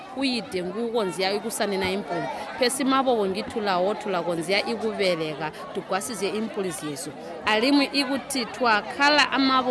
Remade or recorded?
recorded